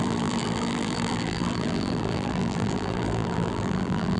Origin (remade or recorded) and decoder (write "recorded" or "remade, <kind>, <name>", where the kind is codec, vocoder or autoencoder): remade, vocoder, BigVGAN v2